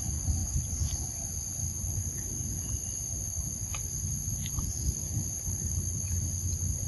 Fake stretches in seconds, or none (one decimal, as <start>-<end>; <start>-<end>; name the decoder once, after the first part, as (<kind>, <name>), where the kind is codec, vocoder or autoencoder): 2.6-6.9 (vocoder, BigVGAN v2)